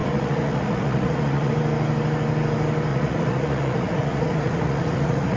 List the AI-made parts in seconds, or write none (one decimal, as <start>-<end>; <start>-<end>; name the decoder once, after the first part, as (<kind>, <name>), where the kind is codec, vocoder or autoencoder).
0.0-1.5 (vocoder, Vocos); 2.9-5.4